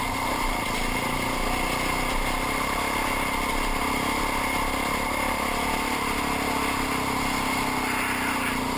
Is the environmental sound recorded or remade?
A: recorded